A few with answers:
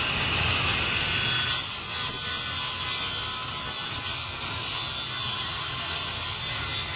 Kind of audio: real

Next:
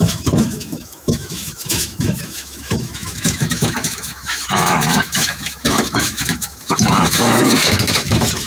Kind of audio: fake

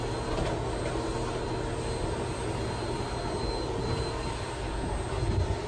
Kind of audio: real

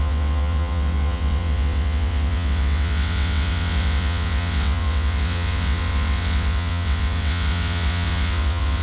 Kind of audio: fake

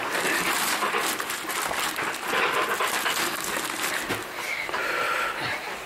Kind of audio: real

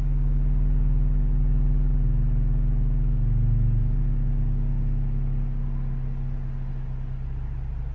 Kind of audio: real